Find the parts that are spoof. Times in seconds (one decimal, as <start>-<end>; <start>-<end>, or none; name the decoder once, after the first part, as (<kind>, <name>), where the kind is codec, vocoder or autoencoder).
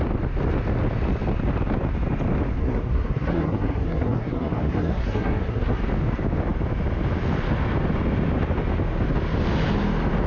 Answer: 2.6-5.8 (codec, SNAC)